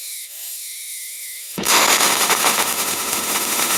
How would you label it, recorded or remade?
remade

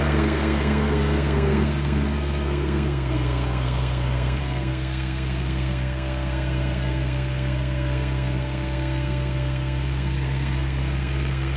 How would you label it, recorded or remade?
remade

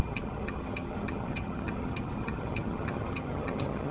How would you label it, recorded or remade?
remade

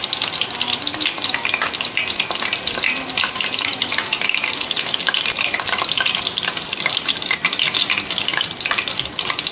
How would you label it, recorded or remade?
recorded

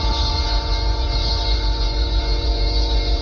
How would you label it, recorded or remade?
remade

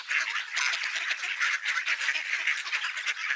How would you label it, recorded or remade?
recorded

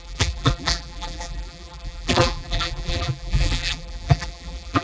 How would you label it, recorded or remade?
remade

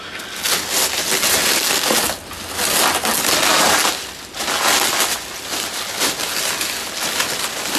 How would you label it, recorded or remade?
recorded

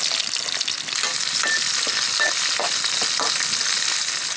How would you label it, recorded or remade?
recorded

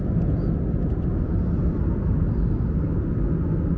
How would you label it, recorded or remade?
recorded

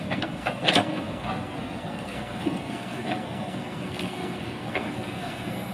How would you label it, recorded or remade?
remade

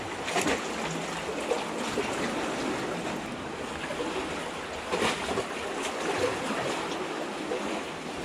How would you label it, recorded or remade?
recorded